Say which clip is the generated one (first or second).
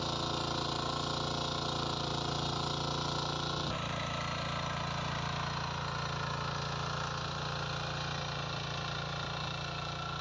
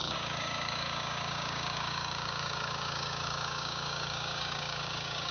second